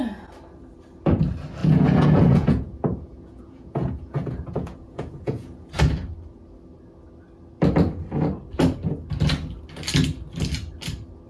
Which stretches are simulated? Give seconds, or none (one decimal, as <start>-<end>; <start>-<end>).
1.6-5.7